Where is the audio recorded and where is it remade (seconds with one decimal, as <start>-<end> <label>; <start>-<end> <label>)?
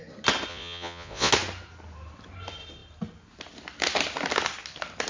0.0-0.5 recorded; 0.5-1.3 remade; 1.3-5.1 recorded